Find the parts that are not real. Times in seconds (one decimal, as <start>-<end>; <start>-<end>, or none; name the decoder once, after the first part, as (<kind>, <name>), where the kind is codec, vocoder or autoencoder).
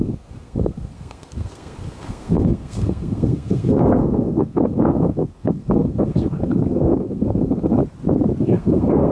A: 0.0-7.8 (codec, SNAC); 8.4-9.1